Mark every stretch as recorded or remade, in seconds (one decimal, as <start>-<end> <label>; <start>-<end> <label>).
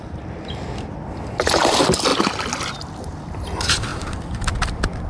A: 0.0-5.1 recorded